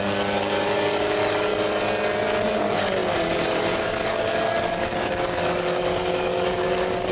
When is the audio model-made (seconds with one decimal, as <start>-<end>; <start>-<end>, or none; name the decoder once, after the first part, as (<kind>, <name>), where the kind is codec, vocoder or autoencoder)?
0.0-1.5 (codec, DAC); 2.6-7.1